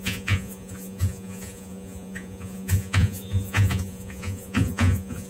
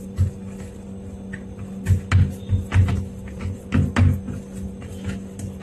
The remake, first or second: first